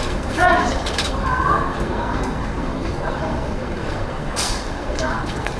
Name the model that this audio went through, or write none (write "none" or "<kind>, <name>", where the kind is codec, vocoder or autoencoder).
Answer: codec, SNAC